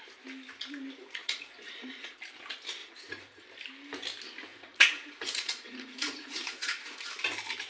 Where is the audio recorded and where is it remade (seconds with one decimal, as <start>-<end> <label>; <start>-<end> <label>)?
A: 0.0-1.2 recorded; 1.2-2.2 remade; 2.2-2.8 recorded; 2.8-3.4 remade; 3.4-4.5 recorded; 4.5-7.1 remade; 7.1-7.7 recorded